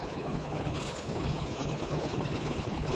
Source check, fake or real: fake